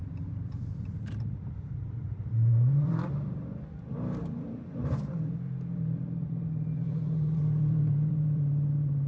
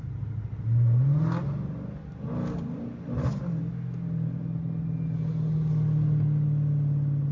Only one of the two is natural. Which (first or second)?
second